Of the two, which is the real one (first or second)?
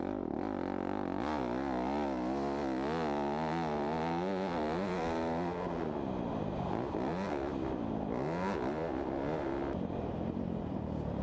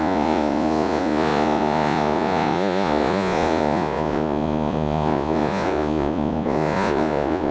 first